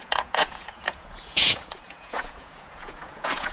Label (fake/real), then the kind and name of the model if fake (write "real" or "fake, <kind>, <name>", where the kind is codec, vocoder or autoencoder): fake, vocoder, Vocos